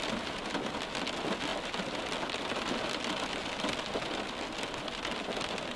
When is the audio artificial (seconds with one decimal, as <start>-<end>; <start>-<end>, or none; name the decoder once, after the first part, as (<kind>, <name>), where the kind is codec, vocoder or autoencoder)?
none